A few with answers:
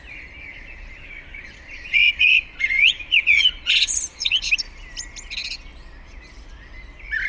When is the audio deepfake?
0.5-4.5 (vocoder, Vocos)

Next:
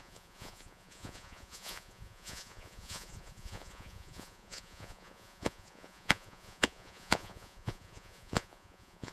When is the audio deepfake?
0.0-9.1 (vocoder, Vocos)

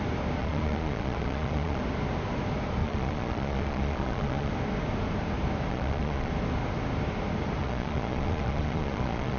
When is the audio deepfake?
0.4-1.8 (vocoder, Vocos); 2.8-4.5; 5.7-6.3; 7.6-9.4

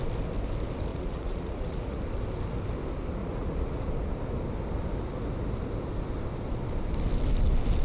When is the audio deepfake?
0.9-2.0 (vocoder, Vocos); 3.2-3.9